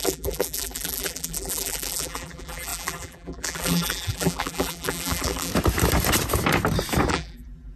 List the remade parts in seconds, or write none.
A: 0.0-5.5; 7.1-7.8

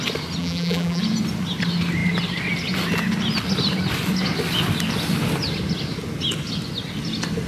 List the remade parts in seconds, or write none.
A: 0.4-1.0

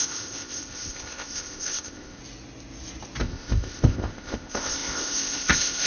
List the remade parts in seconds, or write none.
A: 0.0-2.2; 3.2-5.9

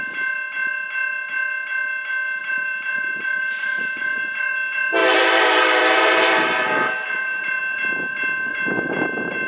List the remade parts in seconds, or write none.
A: 2.4-4.5; 5.0-7.6

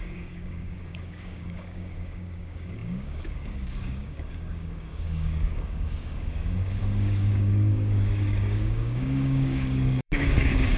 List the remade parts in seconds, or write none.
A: 0.0-10.8

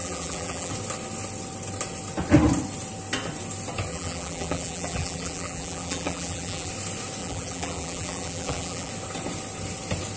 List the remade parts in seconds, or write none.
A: 0.0-0.7; 3.9-6.7; 7.2-8.9

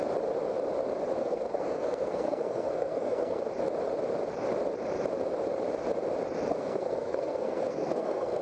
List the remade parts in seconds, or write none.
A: 1.2-3.4; 6.5-8.4

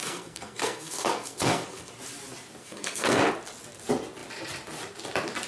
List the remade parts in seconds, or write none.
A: 0.0-1.9; 2.6-3.3